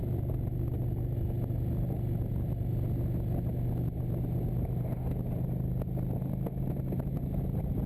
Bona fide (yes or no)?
yes